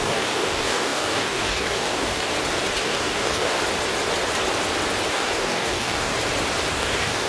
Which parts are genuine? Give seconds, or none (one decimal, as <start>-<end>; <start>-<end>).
2.3-2.8; 3.6-5.1; 6.1-6.7